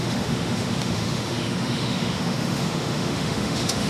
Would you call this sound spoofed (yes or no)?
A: yes